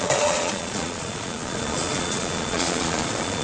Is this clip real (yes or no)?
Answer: no